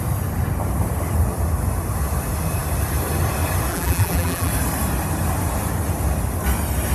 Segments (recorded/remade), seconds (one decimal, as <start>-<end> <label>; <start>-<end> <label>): 0.0-3.7 recorded; 3.7-4.5 remade; 4.5-6.9 recorded